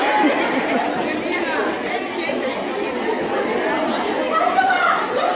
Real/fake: real